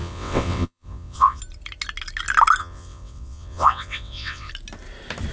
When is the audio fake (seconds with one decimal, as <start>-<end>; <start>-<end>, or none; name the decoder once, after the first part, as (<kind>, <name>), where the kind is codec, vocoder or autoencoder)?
0.0-1.4 (vocoder, WaveNeXt); 2.6-4.5